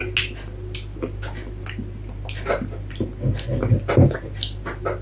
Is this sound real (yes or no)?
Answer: yes